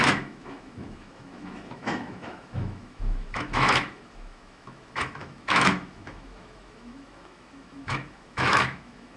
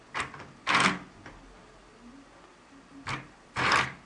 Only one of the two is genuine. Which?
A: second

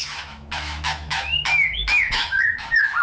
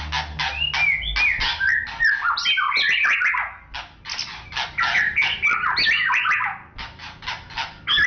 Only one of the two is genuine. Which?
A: second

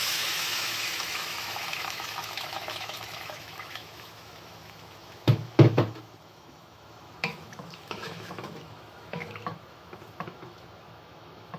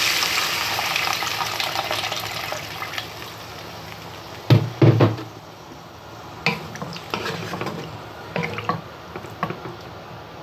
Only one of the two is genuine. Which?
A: second